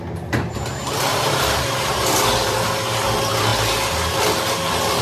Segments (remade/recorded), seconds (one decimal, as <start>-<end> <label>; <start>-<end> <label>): 0.0-1.1 recorded; 1.1-2.5 remade; 2.5-5.0 recorded